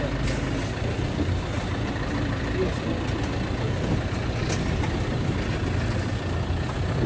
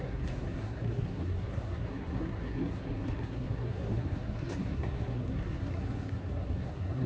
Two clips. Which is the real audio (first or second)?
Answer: first